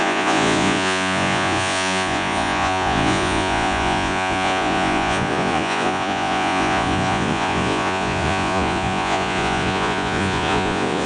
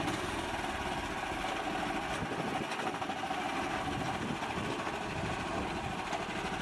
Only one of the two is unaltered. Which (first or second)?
second